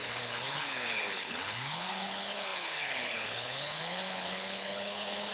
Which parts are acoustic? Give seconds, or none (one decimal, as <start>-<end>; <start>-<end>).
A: none